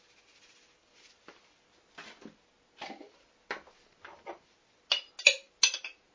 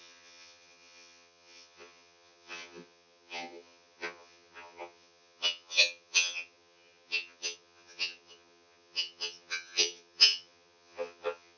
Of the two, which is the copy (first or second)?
second